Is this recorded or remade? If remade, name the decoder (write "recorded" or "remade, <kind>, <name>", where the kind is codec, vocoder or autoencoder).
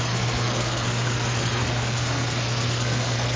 remade, codec, SNAC